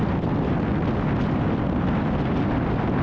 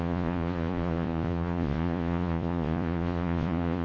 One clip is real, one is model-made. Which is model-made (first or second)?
second